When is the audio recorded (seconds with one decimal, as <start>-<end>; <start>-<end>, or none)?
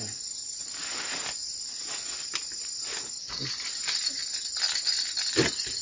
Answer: 4.2-5.8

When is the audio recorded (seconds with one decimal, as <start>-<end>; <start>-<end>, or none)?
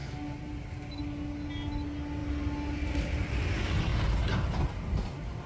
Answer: 0.0-5.5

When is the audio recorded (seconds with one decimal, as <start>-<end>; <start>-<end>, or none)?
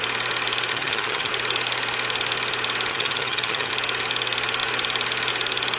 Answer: 0.0-0.7; 1.3-2.9; 3.7-5.8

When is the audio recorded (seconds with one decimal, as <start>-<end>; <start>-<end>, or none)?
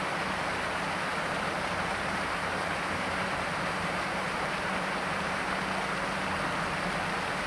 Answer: 0.0-1.1; 5.5-7.5